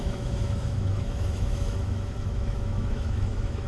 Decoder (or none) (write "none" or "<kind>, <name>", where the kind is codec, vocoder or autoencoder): autoencoder, DAC-VAE